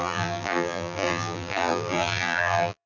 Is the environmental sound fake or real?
fake